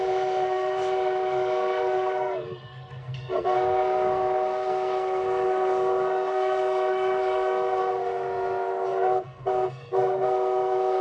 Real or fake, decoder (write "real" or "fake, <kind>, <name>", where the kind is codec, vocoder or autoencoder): fake, codec, SNAC